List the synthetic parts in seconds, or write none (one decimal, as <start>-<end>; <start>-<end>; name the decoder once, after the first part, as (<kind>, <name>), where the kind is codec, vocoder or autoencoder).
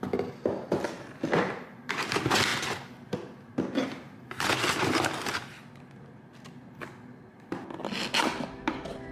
none